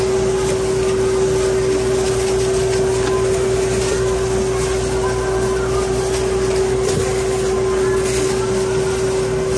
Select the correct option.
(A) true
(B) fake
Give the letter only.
A